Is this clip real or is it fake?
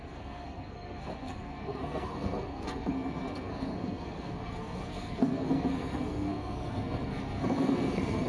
fake